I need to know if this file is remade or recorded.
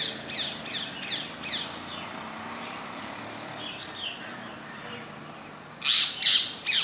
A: recorded